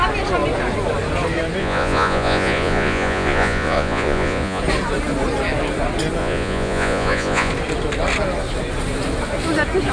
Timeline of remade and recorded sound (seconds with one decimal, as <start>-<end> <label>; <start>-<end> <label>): 0.0-1.6 recorded; 1.6-4.6 remade; 4.6-6.2 recorded; 6.2-7.5 remade; 7.5-9.9 recorded